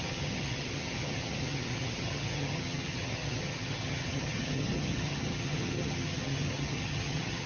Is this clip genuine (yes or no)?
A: no